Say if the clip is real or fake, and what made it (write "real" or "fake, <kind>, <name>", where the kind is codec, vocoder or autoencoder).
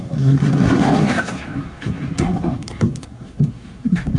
fake, codec, SNAC